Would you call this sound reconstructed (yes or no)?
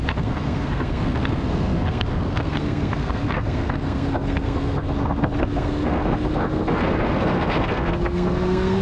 yes